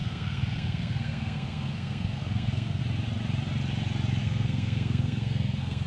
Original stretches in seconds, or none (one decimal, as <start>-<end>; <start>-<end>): 2.8-4.2